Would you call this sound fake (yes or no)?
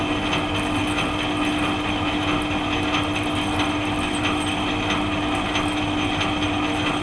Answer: no